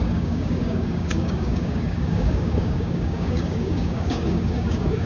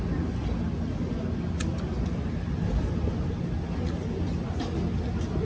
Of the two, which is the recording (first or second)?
second